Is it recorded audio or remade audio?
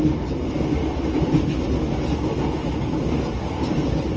recorded